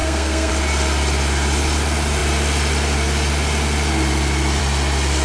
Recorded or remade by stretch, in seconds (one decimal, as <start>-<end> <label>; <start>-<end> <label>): 0.0-0.5 remade; 0.5-5.2 recorded